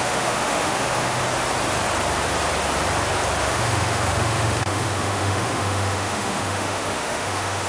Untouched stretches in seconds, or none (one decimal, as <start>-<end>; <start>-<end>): 1.2-3.4